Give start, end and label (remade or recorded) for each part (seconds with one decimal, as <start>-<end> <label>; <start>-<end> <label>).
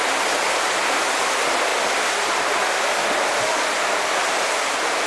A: 0.0-5.1 recorded